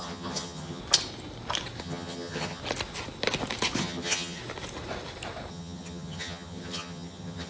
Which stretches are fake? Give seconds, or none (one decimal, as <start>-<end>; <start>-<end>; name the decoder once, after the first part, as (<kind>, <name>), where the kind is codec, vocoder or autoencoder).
0.0-0.8 (vocoder, HiFi-GAN); 1.8-2.6; 3.8-4.4; 5.5-7.5